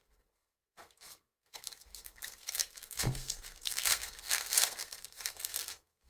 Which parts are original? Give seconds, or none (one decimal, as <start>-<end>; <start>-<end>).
none

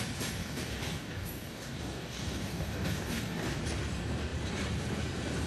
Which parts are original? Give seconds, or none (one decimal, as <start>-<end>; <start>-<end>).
0.0-0.4; 3.6-5.5

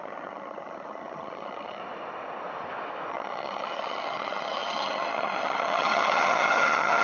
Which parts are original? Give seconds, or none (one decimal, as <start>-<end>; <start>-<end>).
1.8-3.1

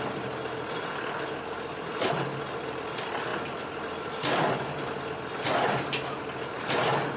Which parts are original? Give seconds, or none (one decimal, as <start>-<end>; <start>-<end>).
0.0-7.2

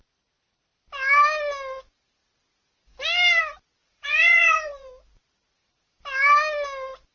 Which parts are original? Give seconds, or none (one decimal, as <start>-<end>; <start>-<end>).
0.0-3.8; 4.9-7.1

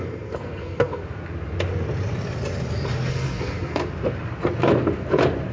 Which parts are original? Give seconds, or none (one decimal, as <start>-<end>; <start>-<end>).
1.0-3.1; 3.8-5.5